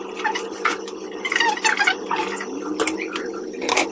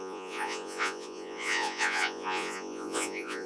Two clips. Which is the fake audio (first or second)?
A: second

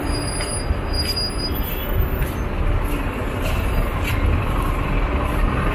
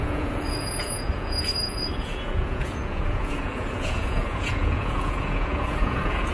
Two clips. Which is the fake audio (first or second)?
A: second